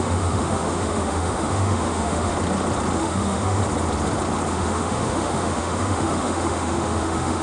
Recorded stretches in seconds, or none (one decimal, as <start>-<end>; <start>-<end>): 2.3-3.0; 3.6-4.5